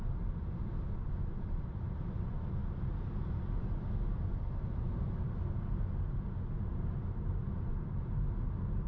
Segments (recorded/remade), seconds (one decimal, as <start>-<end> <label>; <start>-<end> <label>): 0.0-8.9 recorded